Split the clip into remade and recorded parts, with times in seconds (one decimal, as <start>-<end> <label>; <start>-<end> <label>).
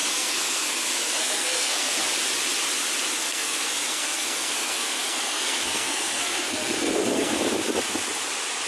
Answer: 0.0-2.0 remade; 2.0-3.2 recorded; 3.2-7.4 remade; 7.4-8.7 recorded